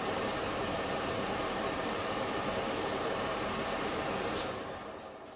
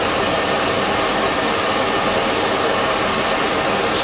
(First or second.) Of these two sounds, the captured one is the second